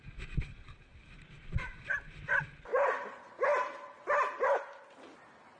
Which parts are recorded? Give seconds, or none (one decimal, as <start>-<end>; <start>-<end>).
0.0-0.9; 1.9-5.6